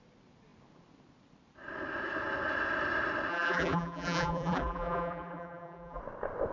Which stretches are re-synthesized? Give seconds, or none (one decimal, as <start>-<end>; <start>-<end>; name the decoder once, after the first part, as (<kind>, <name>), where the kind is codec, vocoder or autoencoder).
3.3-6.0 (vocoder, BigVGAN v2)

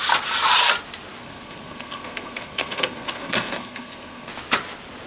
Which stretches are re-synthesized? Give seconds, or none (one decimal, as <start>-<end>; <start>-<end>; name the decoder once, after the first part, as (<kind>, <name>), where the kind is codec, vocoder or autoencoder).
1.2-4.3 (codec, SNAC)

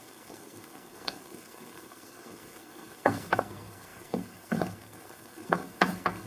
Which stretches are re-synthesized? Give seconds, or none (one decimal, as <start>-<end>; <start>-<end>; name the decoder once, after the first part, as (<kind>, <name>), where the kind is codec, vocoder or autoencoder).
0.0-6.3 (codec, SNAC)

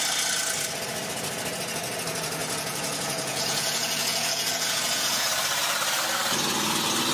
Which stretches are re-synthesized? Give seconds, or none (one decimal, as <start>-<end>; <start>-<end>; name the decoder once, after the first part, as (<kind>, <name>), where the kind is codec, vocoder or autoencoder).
2.4-5.3 (vocoder, Vocos)

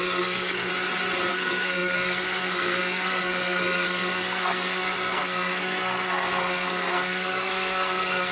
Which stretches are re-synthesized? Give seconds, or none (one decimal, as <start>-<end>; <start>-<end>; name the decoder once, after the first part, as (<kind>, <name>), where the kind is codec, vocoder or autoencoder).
0.0-0.7 (codec, SNAC); 1.3-8.3